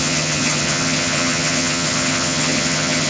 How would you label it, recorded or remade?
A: remade